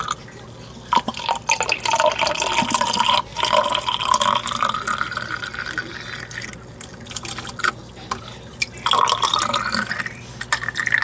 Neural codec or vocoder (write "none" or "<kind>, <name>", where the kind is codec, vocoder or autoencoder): none